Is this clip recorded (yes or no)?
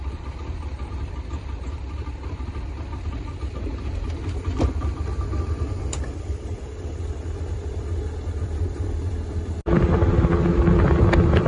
no